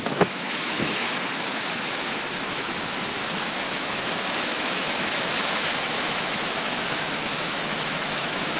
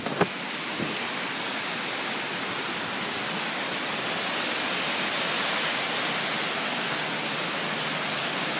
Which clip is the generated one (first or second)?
first